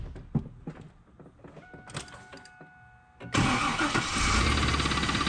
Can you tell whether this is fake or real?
real